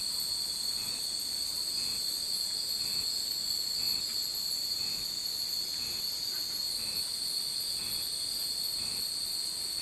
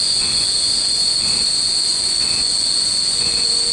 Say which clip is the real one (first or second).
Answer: first